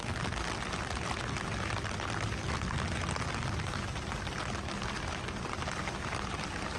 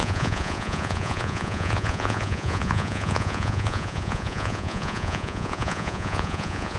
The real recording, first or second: first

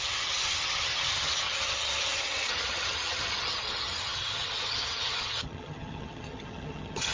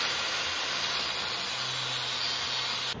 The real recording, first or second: second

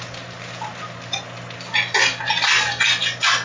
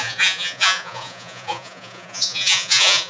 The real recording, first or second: first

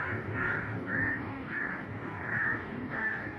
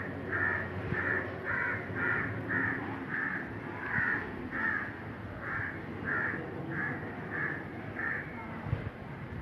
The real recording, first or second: second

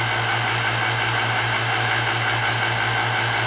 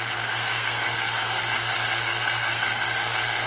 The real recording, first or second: first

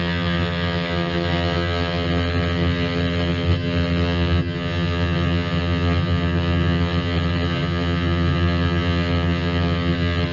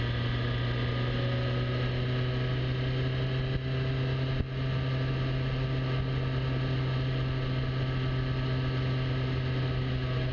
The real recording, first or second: second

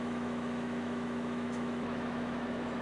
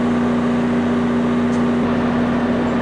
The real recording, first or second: second